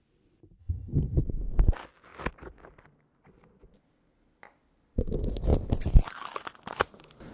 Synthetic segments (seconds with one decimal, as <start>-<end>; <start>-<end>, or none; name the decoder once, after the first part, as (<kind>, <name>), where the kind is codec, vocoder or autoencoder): 0.6-1.2 (vocoder, HiFi-GAN)